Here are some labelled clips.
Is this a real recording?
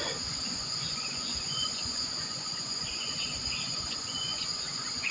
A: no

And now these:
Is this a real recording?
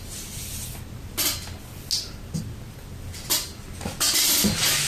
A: yes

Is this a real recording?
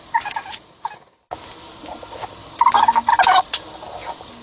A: yes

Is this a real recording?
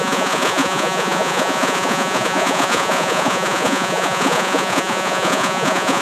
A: no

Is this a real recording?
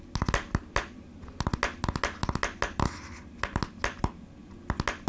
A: yes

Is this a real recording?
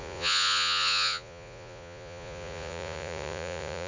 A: no